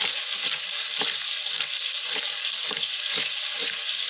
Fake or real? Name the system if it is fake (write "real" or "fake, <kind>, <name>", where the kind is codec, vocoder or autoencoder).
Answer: real